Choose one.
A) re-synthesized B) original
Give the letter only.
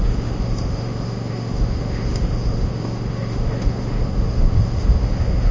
A